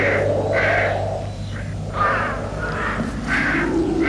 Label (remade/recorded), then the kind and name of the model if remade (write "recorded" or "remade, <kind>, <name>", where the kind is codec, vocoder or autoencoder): recorded